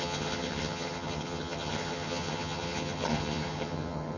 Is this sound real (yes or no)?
no